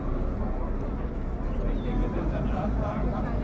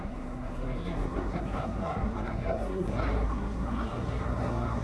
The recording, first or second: first